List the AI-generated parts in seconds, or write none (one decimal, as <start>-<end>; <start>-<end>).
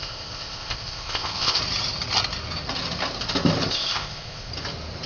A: 0.0-1.6; 3.7-4.5